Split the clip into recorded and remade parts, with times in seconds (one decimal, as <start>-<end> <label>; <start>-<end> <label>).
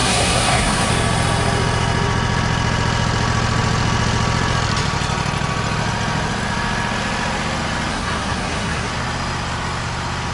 0.0-0.9 remade; 0.9-7.9 recorded; 7.9-8.9 remade; 8.9-10.3 recorded